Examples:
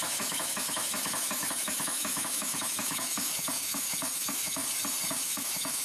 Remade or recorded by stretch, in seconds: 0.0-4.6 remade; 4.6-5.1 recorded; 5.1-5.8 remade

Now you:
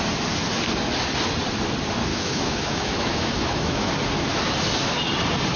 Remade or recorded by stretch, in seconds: 0.0-2.1 recorded; 2.1-3.9 remade; 3.9-5.6 recorded

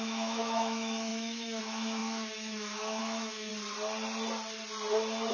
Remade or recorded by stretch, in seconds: 0.0-3.5 remade; 3.5-5.3 recorded

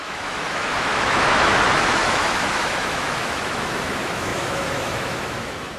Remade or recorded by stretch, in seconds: 0.0-5.8 remade

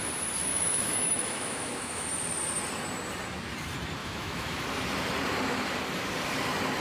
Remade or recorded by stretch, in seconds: 0.0-0.5 recorded; 0.5-2.1 remade; 2.1-4.0 recorded; 4.0-4.6 remade; 4.6-6.8 recorded